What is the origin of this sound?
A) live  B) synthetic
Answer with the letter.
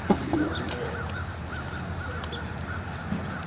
A